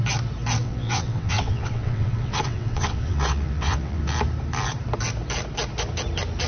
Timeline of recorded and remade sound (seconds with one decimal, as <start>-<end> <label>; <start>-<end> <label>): 0.0-0.6 recorded; 0.6-4.0 remade; 4.0-6.5 recorded

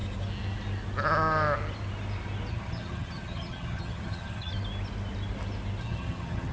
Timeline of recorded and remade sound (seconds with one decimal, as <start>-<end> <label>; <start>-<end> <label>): 0.0-2.5 recorded; 2.5-4.5 remade; 4.5-5.8 recorded; 5.8-6.5 remade

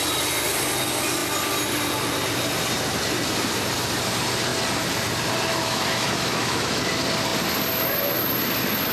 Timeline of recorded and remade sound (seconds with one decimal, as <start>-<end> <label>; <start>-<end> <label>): 0.0-5.5 recorded; 5.5-6.8 remade; 6.8-8.9 recorded

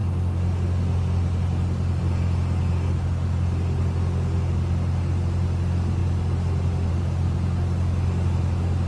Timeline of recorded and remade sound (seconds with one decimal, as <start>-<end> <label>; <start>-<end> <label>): 0.0-8.9 recorded

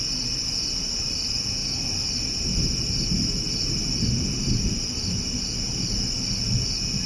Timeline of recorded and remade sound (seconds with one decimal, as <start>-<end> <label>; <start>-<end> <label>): 0.0-7.1 recorded

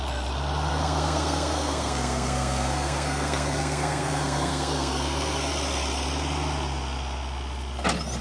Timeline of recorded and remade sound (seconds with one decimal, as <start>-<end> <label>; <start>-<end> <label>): 0.0-0.7 recorded; 0.7-5.5 remade; 5.5-8.2 recorded

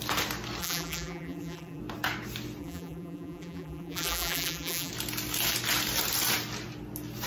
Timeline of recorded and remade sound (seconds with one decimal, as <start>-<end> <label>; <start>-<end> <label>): 0.0-0.6 recorded; 0.6-1.8 remade; 1.8-2.6 recorded; 2.6-4.9 remade; 4.9-7.3 recorded